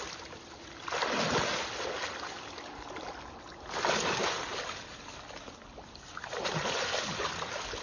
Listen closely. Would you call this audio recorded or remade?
recorded